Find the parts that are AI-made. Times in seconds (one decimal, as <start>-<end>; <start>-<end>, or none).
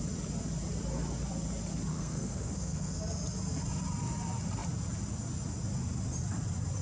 1.9-3.0